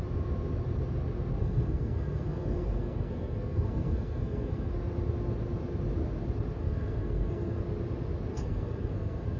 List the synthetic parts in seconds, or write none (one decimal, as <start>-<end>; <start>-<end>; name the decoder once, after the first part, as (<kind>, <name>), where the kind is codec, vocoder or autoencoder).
1.4-4.7 (codec, SNAC); 6.6-7.6; 8.3-9.4